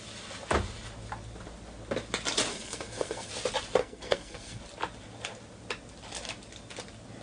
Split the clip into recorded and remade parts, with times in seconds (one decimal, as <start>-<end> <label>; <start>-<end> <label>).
0.0-2.5 recorded; 2.5-3.3 remade; 3.3-3.8 recorded; 3.8-4.6 remade; 4.6-7.2 recorded